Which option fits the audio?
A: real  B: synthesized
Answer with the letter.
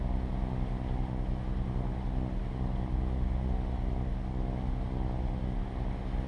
A